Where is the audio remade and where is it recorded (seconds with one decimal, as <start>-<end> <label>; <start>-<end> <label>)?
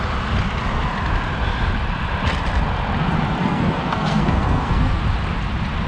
0.0-3.4 recorded; 3.4-5.0 remade; 5.0-5.9 recorded